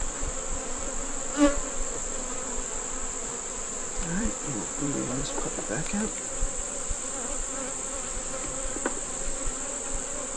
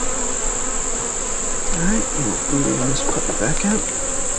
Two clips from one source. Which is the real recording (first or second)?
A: second